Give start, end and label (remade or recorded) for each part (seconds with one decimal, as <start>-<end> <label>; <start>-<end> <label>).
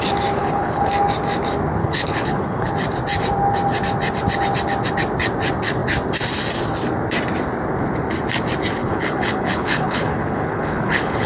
0.0-0.4 recorded; 0.4-0.9 remade; 0.9-1.8 recorded; 1.8-2.7 remade; 2.7-8.8 recorded; 8.8-11.3 remade